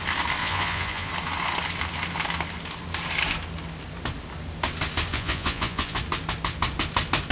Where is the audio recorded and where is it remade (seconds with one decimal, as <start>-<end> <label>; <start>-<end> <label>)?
0.0-0.4 recorded; 0.4-1.1 remade; 1.1-5.1 recorded; 5.1-6.0 remade; 6.0-7.3 recorded